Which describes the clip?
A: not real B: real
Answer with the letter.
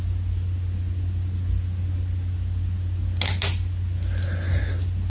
B